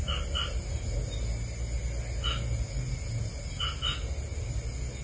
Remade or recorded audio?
recorded